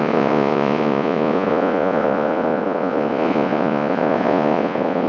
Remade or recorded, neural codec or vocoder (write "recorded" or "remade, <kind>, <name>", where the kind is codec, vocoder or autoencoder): remade, vocoder, Vocos